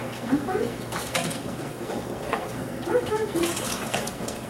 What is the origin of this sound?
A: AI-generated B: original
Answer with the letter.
A